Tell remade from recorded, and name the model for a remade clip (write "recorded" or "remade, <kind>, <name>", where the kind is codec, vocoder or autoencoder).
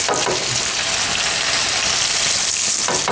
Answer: recorded